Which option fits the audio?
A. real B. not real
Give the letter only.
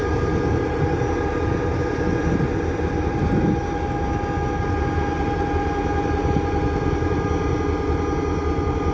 A